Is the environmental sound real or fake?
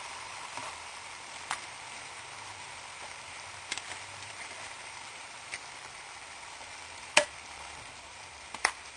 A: fake